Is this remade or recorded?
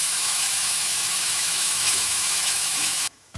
remade